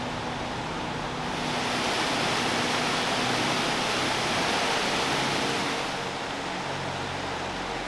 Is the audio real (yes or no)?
yes